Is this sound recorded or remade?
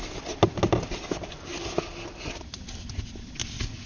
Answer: recorded